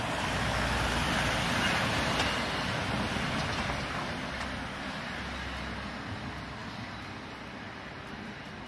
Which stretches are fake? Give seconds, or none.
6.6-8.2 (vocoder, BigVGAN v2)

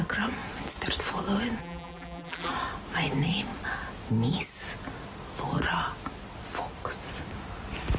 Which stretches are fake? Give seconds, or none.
1.6-2.5 (vocoder, BigVGAN v2)

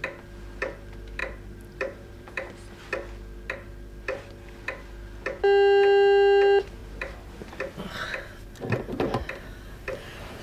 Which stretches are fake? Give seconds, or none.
1.2-2.5 (vocoder, BigVGAN v2); 6.8-7.7